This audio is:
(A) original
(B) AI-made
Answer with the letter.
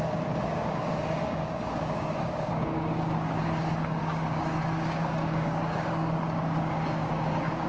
B